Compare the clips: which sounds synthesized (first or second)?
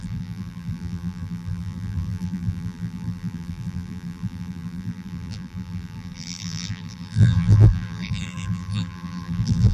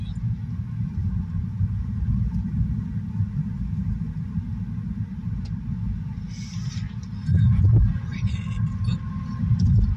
first